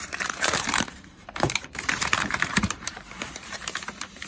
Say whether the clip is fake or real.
fake